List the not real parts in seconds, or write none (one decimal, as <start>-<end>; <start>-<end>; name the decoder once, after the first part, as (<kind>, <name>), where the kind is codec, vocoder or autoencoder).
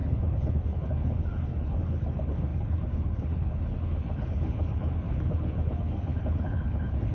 0.0-7.1 (codec, HILCodec)